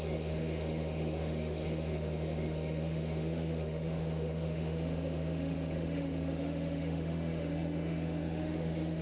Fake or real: fake